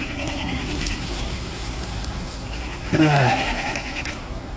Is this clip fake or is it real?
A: fake